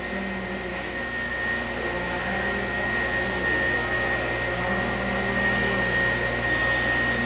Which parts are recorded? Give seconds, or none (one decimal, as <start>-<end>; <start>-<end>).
0.0-0.7; 1.3-7.3